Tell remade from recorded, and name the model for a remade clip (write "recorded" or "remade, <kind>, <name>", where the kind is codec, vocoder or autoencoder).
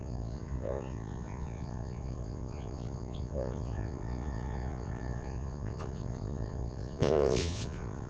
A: remade, vocoder, Vocos